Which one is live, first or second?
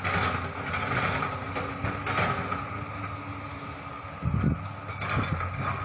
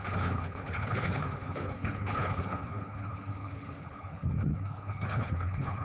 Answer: first